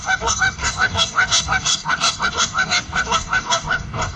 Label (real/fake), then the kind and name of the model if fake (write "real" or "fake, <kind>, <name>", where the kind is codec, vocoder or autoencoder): fake, codec, DAC